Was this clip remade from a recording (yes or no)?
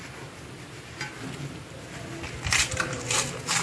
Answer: no